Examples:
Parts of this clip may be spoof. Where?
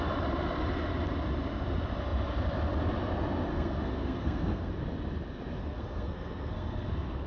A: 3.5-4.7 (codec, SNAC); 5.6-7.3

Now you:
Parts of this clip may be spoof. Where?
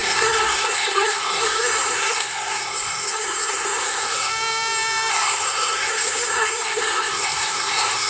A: 0.0-4.3 (codec, SNAC); 5.1-8.1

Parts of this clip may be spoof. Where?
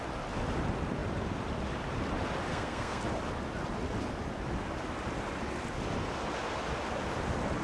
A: 2.5-3.0 (codec, SNAC)